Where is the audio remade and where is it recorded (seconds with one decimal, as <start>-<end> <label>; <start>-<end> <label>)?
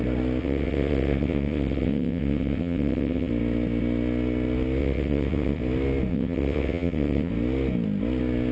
0.0-0.4 recorded; 0.4-3.3 remade; 3.3-4.8 recorded; 4.8-5.6 remade; 5.6-6.1 recorded; 6.1-7.3 remade; 7.3-8.5 recorded